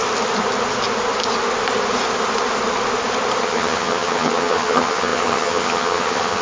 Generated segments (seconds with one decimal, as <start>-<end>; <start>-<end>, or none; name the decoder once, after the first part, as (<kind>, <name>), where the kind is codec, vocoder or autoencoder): 3.4-6.4 (vocoder, HiFi-GAN)